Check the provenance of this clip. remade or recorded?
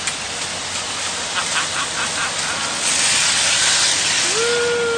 recorded